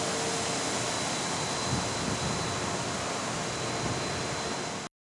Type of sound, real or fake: real